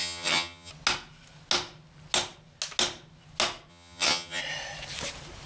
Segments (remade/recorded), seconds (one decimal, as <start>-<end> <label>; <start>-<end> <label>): 0.0-0.7 remade; 0.7-3.7 recorded; 3.7-4.4 remade; 4.4-5.5 recorded